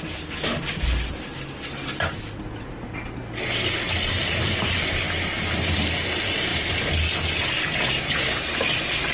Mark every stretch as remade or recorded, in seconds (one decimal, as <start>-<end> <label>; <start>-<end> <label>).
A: 0.0-9.1 recorded